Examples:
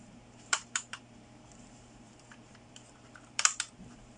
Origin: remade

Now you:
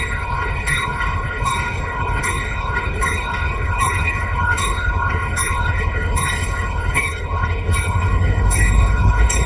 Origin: remade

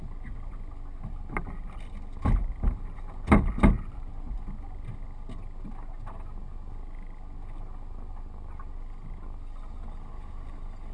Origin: recorded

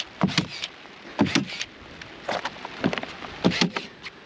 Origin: recorded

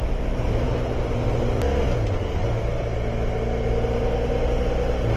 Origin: recorded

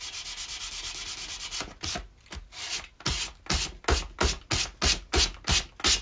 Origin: recorded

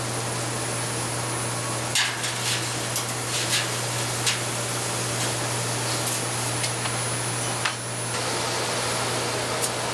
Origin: recorded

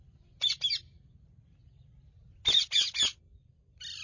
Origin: recorded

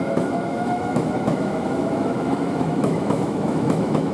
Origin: remade